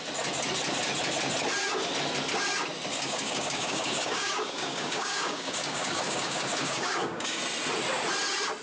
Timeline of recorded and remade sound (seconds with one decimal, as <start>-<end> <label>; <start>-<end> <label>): 0.0-2.9 recorded; 2.9-7.4 remade; 7.4-8.6 recorded